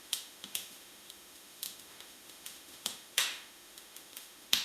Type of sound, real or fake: fake